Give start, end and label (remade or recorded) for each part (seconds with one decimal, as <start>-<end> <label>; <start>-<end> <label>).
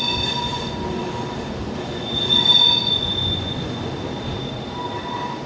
0.0-0.5 recorded; 0.5-1.0 remade; 1.0-1.9 recorded; 1.9-3.9 remade; 3.9-5.5 recorded